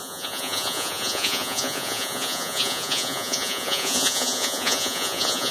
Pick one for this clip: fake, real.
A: fake